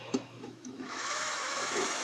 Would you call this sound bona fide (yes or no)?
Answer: no